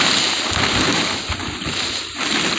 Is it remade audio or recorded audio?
recorded